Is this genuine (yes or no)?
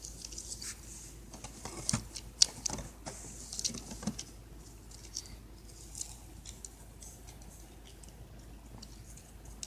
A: yes